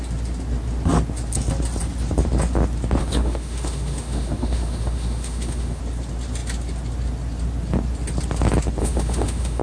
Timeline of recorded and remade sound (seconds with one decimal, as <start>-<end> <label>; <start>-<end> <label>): 0.0-3.0 recorded; 3.0-5.8 remade; 5.8-8.8 recorded; 8.8-9.6 remade